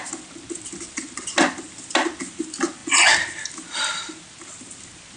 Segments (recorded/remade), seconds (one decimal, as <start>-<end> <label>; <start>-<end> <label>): 0.0-5.2 recorded